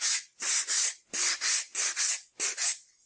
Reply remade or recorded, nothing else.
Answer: recorded